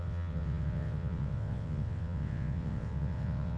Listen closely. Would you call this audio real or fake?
fake